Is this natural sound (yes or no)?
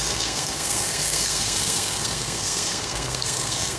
no